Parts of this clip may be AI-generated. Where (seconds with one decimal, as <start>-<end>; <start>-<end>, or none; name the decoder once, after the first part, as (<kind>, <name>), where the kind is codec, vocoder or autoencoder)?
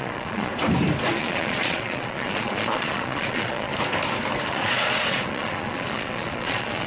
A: 0.0-0.5 (vocoder, Vocos); 1.1-3.7; 4.5-6.9